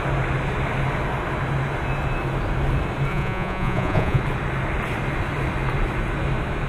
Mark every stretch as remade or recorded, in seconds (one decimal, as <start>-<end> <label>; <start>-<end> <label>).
0.0-3.1 recorded; 3.1-4.2 remade; 4.2-6.7 recorded